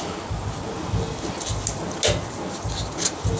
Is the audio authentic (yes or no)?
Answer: yes